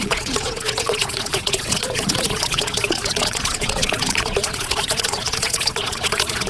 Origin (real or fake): fake